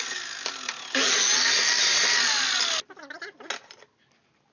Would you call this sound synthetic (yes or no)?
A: no